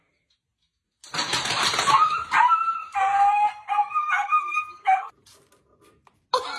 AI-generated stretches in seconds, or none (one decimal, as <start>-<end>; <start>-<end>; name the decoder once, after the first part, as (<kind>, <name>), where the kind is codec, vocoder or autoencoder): 3.5-5.1 (codec, SNAC)